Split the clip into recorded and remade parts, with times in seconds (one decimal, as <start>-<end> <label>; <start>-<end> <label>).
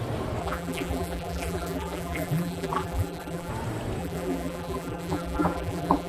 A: 0.0-0.4 recorded; 0.4-3.5 remade; 3.5-4.0 recorded; 4.0-6.1 remade